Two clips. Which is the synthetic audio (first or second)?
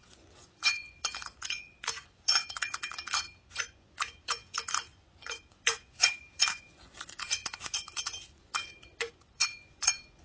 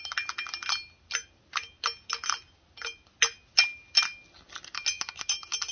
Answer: first